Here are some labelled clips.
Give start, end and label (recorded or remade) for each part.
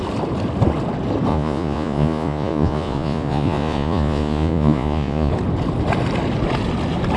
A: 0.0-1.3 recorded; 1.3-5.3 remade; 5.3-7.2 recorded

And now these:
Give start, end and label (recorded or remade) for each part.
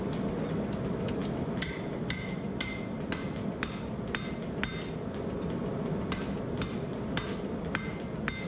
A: 0.0-8.5 recorded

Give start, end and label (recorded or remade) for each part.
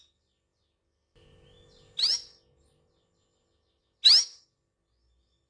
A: 0.0-5.5 recorded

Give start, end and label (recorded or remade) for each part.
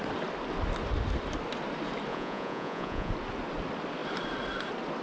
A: 0.0-2.1 recorded; 2.1-3.1 remade; 3.1-5.0 recorded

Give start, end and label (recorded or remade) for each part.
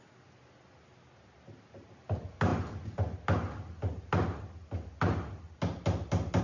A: 0.0-6.4 recorded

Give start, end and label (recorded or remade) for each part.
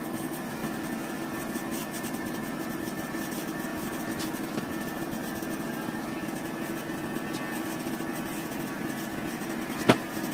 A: 0.0-10.3 recorded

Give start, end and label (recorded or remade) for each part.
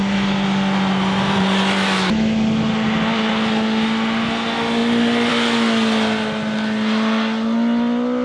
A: 0.0-8.2 recorded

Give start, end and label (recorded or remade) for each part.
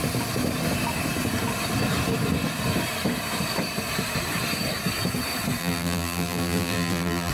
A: 0.0-5.6 recorded; 5.6-7.3 remade